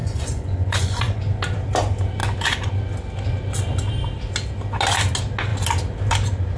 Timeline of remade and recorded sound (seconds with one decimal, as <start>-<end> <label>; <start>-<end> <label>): 0.0-1.2 remade; 1.2-6.6 recorded